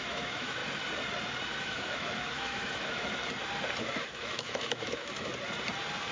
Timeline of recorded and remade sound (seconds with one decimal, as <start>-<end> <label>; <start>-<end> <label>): 0.0-0.6 remade; 0.6-1.6 recorded; 1.6-3.2 remade; 3.2-3.8 recorded; 3.8-5.3 remade; 5.3-6.1 recorded